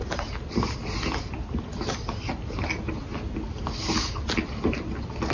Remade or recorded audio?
recorded